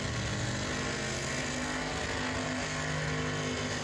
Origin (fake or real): real